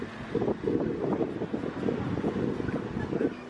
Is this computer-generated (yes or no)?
no